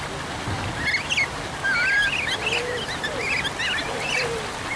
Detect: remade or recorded recorded